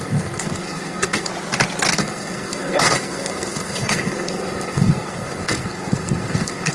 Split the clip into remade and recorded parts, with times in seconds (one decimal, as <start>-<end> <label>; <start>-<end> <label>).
0.0-1.3 remade; 1.3-1.9 recorded; 1.9-6.7 remade